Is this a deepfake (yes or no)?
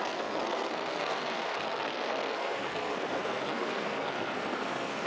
yes